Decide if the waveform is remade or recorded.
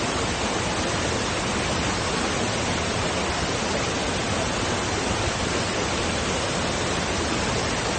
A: recorded